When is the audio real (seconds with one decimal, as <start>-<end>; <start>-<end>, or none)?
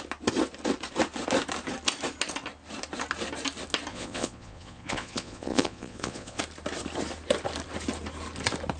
0.0-3.9; 6.4-8.8